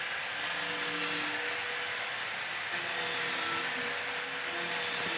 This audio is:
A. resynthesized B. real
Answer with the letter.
B